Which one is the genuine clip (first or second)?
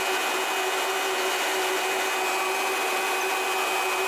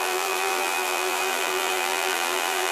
first